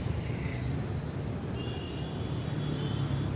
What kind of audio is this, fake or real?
real